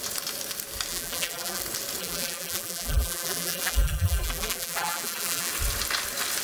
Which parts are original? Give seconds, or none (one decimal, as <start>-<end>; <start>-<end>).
0.0-0.9; 1.6-2.0; 5.5-6.4